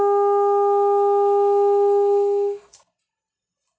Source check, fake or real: real